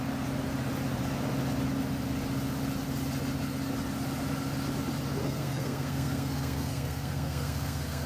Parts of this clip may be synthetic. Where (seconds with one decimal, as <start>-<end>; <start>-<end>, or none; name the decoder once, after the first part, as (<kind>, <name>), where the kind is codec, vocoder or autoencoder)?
5.2-8.1 (codec, SNAC)

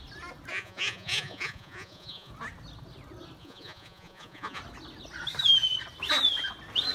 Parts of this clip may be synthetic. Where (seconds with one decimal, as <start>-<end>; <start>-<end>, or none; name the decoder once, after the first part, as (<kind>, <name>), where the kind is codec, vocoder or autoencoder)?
0.5-2.3 (vocoder, Vocos); 3.4-4.6

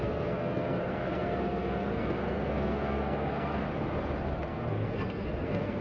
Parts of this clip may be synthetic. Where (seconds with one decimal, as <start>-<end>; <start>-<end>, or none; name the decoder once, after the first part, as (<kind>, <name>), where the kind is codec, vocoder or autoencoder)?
0.0-3.6 (codec, SNAC); 4.4-5.8

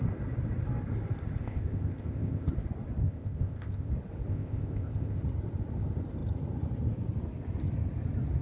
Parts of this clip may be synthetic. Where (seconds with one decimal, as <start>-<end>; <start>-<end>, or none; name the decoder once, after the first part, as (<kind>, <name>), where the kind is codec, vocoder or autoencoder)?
1.4-2.5 (codec, ZipCodec); 3.0-3.9; 4.3-5.2